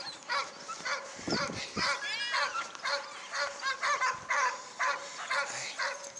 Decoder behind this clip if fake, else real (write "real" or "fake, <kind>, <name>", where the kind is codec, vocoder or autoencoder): real